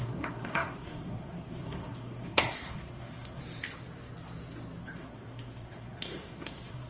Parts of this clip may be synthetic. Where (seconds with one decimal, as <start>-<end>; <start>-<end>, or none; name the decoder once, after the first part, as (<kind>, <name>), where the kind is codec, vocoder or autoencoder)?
0.0-3.4 (codec, SNAC); 4.8-6.9

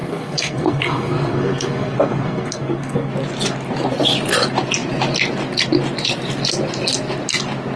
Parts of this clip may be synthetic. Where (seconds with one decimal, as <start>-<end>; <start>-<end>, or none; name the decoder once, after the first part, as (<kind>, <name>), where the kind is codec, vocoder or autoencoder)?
0.0-3.1 (codec, SNAC)

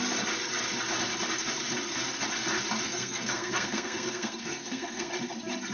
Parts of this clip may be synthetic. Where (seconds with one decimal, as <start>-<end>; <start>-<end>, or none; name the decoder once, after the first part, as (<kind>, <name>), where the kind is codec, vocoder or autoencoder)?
2.9-5.1 (codec, SNAC)